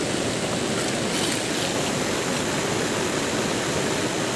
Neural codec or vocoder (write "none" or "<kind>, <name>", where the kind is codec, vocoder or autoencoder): none